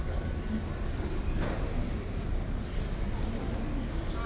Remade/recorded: recorded